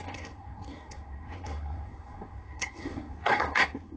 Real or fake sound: fake